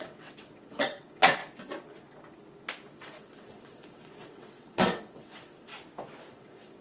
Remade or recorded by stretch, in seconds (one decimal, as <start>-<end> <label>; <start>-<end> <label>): 0.0-1.4 remade; 1.4-2.9 recorded; 2.9-5.7 remade; 5.7-6.3 recorded; 6.3-6.8 remade